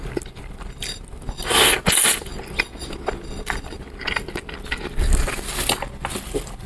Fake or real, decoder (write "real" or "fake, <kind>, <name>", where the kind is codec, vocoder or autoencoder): real